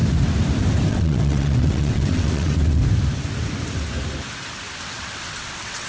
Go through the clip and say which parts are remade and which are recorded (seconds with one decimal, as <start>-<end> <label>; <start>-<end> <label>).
0.0-0.9 recorded; 0.9-2.8 remade; 2.8-4.8 recorded; 4.8-5.9 remade